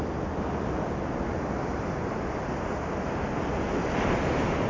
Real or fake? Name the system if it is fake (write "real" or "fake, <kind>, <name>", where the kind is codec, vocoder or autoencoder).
real